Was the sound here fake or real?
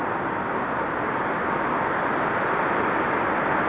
real